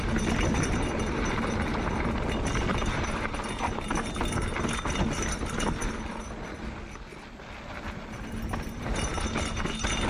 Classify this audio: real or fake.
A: real